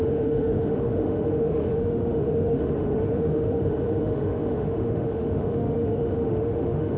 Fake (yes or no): yes